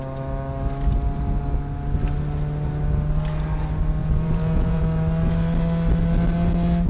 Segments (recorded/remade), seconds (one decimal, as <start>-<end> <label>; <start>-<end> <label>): 0.0-4.0 recorded; 4.0-4.8 remade; 4.8-6.9 recorded